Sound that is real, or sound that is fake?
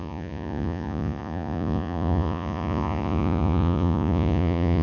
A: fake